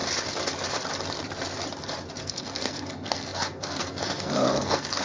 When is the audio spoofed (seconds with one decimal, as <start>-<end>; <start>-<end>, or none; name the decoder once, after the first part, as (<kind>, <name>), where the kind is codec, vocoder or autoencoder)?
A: 2.2-5.0 (codec, SNAC)